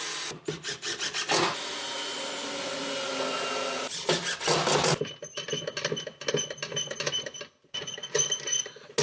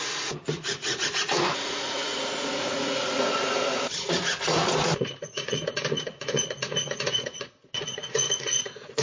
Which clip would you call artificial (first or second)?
second